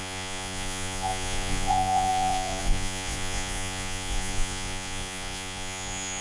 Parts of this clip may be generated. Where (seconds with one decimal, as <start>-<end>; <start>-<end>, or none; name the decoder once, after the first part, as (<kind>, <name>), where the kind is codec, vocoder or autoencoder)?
0.0-6.2 (vocoder, Vocos)